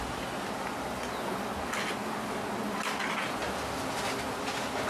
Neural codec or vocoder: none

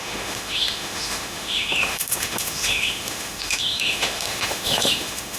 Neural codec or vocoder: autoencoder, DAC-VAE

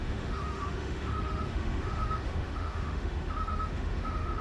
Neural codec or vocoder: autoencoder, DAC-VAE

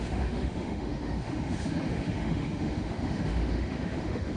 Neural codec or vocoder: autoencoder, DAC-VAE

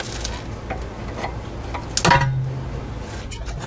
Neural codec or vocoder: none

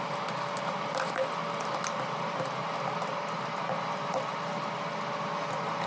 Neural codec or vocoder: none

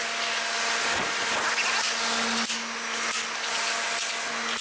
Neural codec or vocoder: none